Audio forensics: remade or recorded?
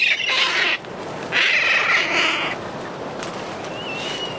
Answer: recorded